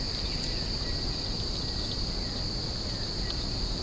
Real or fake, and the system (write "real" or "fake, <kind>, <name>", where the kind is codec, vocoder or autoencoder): real